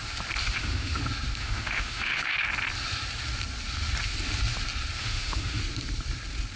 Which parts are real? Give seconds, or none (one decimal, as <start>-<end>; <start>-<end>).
0.0-0.4; 1.0-1.4; 2.3-5.0; 5.6-6.6